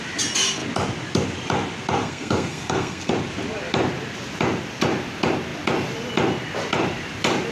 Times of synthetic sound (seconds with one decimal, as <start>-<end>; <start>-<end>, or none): 2.0-3.1